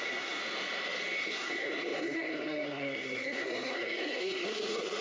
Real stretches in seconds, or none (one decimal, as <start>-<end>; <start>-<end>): 0.4-1.2

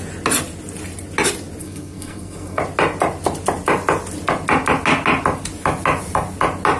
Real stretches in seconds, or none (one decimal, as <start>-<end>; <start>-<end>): 0.0-1.6; 2.6-6.8

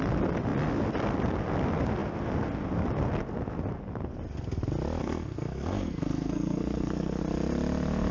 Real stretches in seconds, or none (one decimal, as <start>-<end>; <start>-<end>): 0.0-5.0; 7.2-8.1

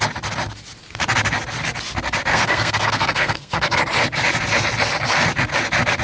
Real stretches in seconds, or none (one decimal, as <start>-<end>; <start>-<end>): 0.0-2.3; 3.8-6.0

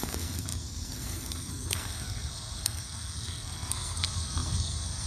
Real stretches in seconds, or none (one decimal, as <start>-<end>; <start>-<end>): none

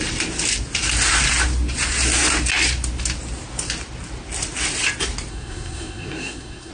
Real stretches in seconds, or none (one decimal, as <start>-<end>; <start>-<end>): 0.0-5.3

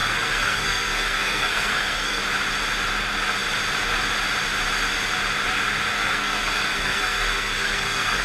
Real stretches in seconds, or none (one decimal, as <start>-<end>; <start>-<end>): 2.2-5.9